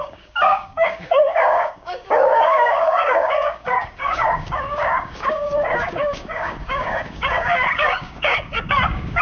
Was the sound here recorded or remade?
remade